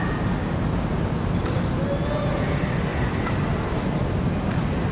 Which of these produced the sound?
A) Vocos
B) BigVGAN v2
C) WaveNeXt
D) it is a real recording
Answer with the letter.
D